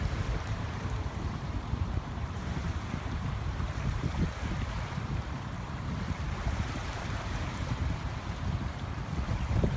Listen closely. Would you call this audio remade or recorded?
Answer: remade